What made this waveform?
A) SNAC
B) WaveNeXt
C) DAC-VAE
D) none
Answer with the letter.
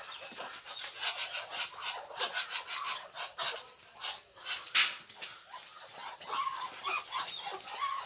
D